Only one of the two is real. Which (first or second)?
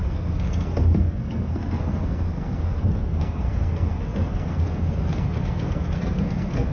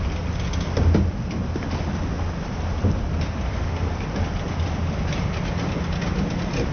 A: second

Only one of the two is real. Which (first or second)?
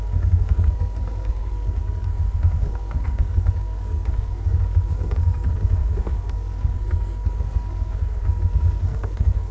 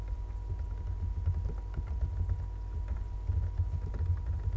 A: second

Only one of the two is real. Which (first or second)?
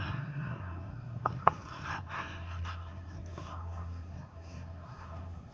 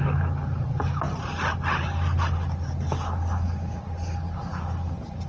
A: second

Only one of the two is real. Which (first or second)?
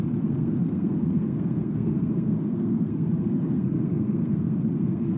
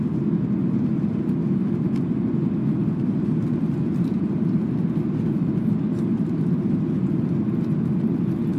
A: second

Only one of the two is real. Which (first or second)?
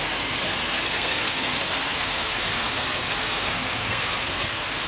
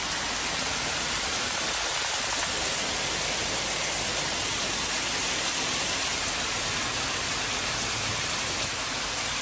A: second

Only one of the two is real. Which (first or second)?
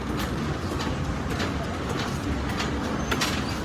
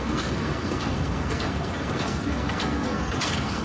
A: first